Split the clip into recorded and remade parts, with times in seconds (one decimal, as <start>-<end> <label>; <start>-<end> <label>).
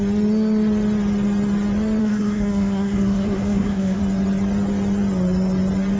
0.0-2.0 recorded; 2.0-4.0 remade; 4.0-6.0 recorded